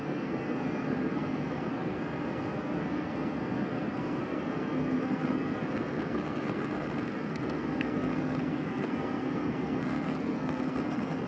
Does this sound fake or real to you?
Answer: fake